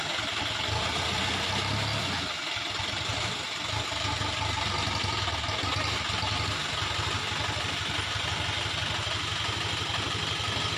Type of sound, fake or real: real